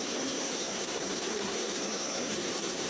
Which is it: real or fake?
fake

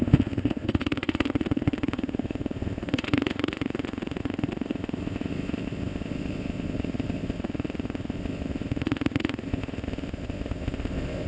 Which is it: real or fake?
fake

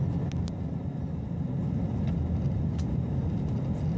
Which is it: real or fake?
real